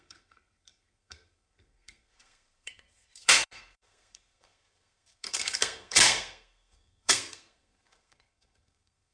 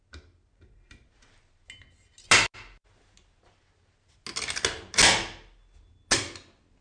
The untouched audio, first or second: second